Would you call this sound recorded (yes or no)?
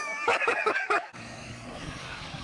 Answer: no